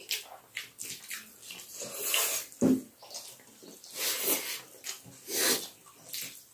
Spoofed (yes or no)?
no